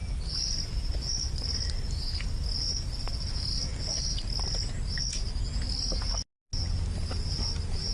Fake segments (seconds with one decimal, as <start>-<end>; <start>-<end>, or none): none